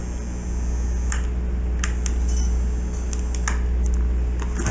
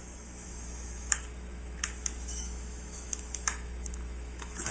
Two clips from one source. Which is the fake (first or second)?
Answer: second